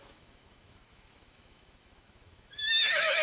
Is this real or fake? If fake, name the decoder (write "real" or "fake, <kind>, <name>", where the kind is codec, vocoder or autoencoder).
fake, autoencoder, DAC-VAE